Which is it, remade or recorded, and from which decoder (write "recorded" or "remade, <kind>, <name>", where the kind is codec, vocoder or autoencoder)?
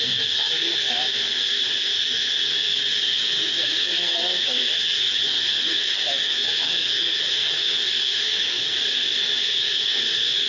remade, codec, SNAC